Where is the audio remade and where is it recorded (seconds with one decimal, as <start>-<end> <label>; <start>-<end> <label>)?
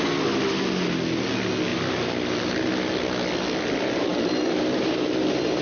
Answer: 0.0-1.7 recorded; 1.7-2.5 remade; 2.5-4.1 recorded; 4.1-5.6 remade